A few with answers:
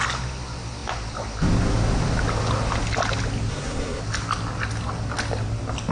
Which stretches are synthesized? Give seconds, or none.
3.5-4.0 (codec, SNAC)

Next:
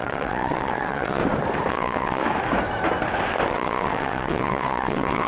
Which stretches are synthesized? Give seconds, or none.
0.0-1.2 (vocoder, WaveNeXt); 1.7-2.2; 3.5-5.3

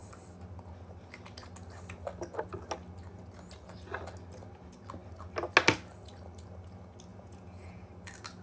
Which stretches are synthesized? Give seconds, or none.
7.1-7.9 (vocoder, Vocos)

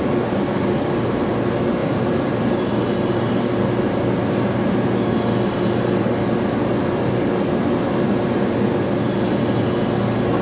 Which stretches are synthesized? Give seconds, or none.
none

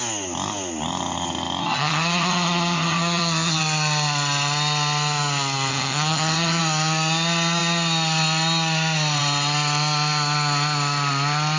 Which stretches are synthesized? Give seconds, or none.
1.6-3.6 (vocoder, HiFi-GAN); 5.7-6.6

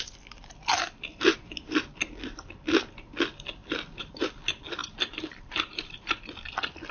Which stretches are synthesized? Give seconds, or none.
4.8-6.2 (vocoder, BigVGAN v2)